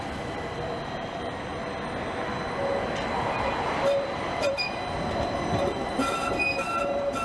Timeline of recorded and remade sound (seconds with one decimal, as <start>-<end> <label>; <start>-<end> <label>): 0.0-1.5 remade; 1.5-3.1 recorded; 3.1-7.2 remade